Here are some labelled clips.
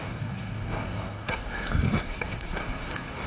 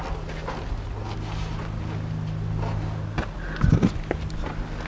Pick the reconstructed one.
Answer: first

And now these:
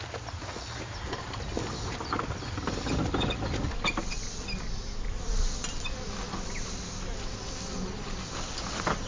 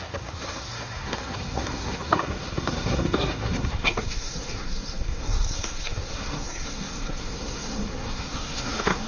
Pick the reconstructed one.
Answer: second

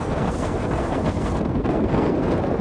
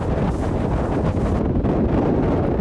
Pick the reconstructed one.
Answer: first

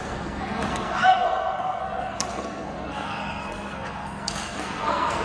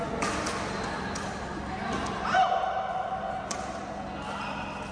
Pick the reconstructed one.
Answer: first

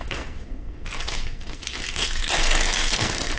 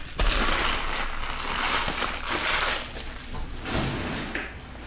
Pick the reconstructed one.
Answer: first